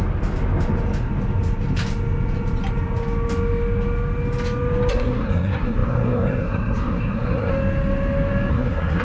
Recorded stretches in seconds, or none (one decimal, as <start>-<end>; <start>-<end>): 0.0-4.9; 7.5-8.5